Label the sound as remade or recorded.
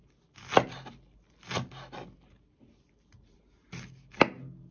recorded